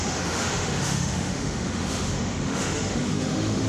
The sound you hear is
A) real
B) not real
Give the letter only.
B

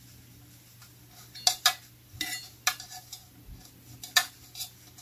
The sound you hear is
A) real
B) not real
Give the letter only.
A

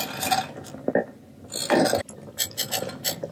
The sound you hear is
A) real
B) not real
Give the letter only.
A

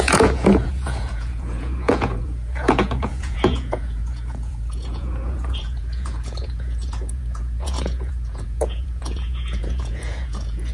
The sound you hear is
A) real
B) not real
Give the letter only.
B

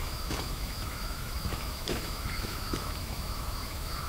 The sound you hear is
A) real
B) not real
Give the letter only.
B